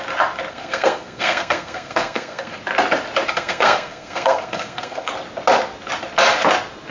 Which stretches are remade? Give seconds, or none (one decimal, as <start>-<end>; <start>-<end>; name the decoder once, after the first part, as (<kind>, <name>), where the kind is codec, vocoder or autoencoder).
0.5-2.6 (codec, SNAC); 3.3-5.1